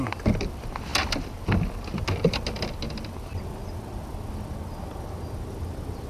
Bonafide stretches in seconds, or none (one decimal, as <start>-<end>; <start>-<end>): 0.0-6.1